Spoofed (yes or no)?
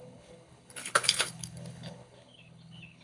yes